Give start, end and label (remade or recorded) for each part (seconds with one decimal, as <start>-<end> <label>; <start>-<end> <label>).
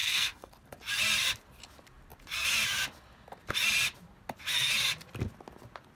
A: 0.0-0.5 remade; 0.5-6.0 recorded